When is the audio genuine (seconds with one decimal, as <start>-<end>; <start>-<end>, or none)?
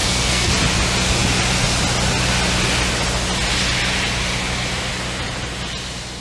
0.5-6.2